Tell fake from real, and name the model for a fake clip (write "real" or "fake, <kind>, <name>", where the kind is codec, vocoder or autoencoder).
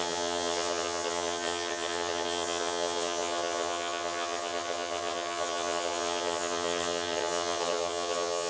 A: fake, vocoder, HiFi-GAN